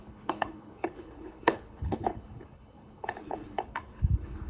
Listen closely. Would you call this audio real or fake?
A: fake